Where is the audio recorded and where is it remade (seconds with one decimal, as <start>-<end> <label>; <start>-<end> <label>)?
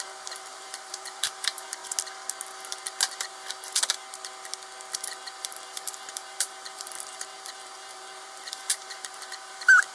0.0-1.8 remade; 1.8-5.5 recorded; 5.5-9.9 remade